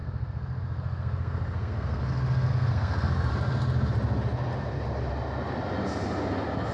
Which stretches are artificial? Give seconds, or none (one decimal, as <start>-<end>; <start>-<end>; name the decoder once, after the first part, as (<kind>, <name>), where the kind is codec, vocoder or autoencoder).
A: 0.0-2.0 (codec, SNAC); 2.5-3.3